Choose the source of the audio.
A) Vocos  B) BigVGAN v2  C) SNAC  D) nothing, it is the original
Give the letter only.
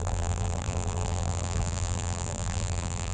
B